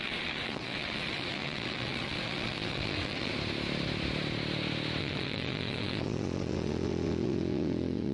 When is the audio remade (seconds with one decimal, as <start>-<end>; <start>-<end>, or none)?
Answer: 0.0-3.3; 5.0-8.1